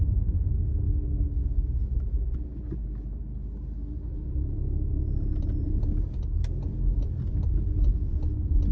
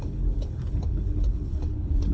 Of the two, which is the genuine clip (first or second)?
first